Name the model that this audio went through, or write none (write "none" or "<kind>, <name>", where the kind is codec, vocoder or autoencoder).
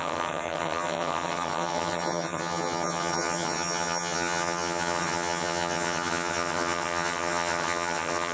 vocoder, HiFi-GAN